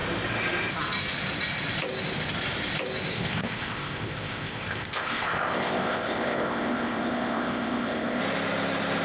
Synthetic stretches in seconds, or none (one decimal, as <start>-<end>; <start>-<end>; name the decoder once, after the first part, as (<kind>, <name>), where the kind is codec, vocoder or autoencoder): 3.1-8.2 (codec, ZipCodec)